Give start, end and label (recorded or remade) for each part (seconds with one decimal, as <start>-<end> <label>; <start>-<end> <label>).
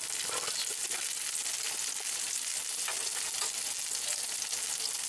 0.0-5.1 recorded